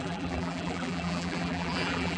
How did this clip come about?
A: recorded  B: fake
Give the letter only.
B